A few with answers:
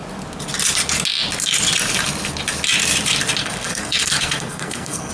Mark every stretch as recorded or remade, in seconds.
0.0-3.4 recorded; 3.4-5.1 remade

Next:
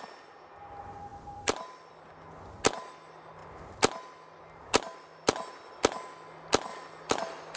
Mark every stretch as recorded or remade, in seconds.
0.0-1.1 recorded; 1.1-1.9 remade; 1.9-6.7 recorded; 6.7-7.6 remade

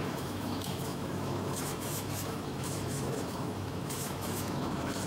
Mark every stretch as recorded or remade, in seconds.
0.0-5.1 remade

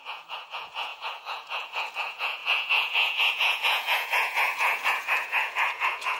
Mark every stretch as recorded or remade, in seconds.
0.0-6.2 remade

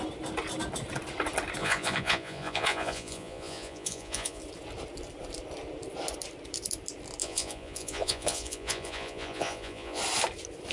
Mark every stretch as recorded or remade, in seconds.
0.0-1.6 recorded; 1.6-4.4 remade; 4.4-7.2 recorded; 7.2-10.0 remade; 10.0-10.7 recorded

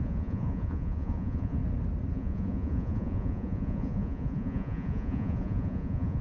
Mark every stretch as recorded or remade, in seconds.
0.0-1.6 remade; 1.6-2.1 recorded; 2.1-6.2 remade